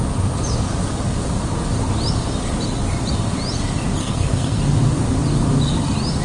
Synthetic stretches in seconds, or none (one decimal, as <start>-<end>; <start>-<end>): 4.0-4.6